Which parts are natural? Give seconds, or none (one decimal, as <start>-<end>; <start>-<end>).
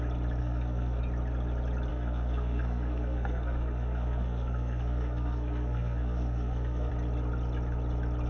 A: 0.0-0.4; 1.0-1.9; 6.9-8.3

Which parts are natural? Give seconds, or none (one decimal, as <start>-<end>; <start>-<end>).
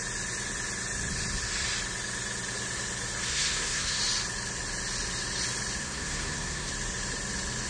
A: 0.0-3.3; 4.0-5.8; 6.7-7.7